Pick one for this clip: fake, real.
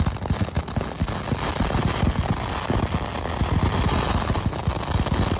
real